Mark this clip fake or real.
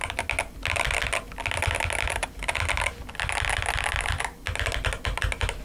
real